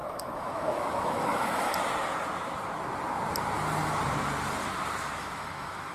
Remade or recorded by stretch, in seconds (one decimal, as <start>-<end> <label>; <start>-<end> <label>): 0.0-1.7 remade; 1.7-5.2 recorded; 5.2-5.9 remade